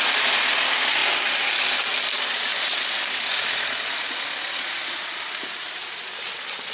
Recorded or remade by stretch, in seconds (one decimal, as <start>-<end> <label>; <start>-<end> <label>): 0.0-6.7 recorded